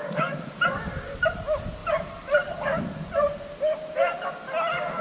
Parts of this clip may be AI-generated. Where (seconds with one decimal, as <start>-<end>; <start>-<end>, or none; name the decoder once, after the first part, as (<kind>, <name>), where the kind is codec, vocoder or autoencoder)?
none

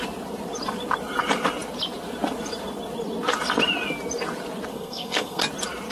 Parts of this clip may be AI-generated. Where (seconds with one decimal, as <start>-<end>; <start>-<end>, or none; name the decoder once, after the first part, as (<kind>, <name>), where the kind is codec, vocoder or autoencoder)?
4.7-5.4 (codec, SNAC)